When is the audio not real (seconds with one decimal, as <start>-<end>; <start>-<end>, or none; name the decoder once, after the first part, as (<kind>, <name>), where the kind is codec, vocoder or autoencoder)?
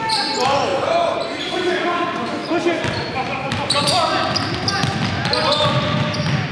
0.0-0.7 (vocoder, BigVGAN v2); 1.4-2.4; 3.1-4.8